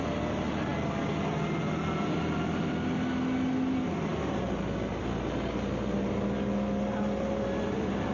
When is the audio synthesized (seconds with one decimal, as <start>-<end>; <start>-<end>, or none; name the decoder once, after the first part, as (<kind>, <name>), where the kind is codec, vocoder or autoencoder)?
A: none